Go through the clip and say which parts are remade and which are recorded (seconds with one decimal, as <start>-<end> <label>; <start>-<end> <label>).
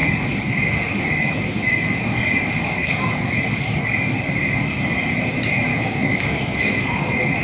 0.0-4.2 remade; 4.2-5.7 recorded; 5.7-7.4 remade